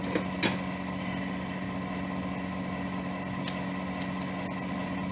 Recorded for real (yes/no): yes